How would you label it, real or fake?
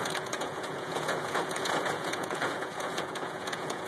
fake